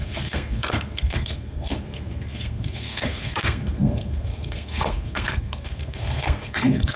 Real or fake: fake